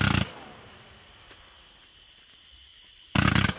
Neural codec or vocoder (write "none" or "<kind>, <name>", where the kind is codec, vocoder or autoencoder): none